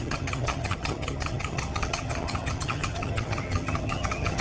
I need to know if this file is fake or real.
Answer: fake